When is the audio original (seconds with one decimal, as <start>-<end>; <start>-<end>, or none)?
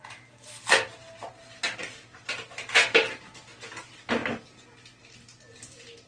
0.0-6.1